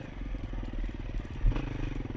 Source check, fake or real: real